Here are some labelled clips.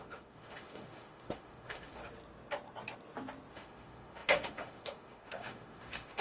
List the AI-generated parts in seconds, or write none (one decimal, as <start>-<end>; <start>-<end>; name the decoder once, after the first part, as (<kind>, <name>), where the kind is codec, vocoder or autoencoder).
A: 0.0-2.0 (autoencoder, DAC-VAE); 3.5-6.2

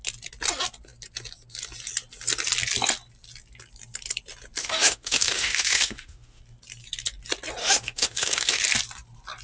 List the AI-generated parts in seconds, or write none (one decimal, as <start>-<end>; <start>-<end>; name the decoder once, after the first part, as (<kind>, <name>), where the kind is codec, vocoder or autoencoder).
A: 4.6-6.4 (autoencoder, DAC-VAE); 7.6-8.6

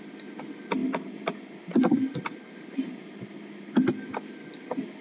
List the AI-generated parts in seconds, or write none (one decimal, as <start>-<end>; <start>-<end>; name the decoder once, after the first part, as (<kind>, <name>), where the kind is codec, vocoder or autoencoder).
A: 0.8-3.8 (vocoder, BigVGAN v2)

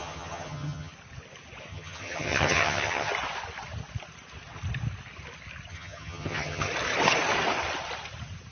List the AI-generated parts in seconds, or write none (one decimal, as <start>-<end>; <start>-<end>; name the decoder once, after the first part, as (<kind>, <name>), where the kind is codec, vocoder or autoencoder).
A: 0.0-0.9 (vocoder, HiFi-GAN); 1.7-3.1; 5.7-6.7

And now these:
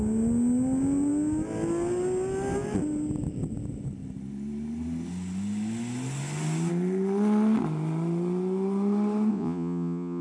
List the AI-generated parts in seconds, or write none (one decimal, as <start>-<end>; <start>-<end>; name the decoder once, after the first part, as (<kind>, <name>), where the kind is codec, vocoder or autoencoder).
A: 9.3-10.2 (vocoder, Vocos)